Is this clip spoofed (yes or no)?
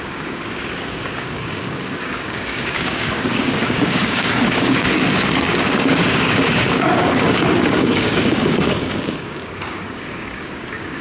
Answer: yes